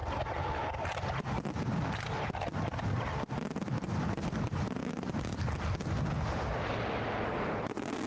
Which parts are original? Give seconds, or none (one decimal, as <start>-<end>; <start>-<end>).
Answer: 0.0-8.1